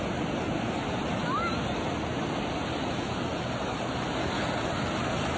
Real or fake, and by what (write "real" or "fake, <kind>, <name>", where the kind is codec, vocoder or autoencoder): real